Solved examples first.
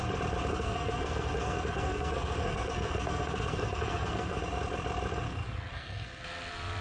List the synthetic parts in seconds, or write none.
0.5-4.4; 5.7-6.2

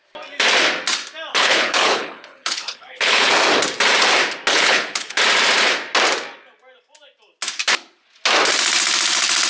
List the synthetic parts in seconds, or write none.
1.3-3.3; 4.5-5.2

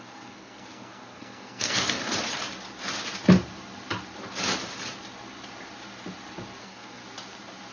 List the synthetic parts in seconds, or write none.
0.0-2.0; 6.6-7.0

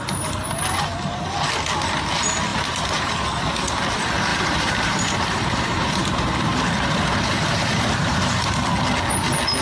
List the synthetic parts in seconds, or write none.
2.5-3.1; 4.3-8.8